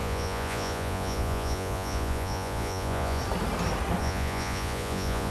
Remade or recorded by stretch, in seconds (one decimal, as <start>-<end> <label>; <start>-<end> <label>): 0.0-3.2 remade; 3.2-4.0 recorded; 4.0-5.3 remade